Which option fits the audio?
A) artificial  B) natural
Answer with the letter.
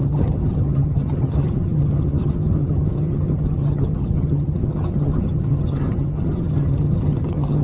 A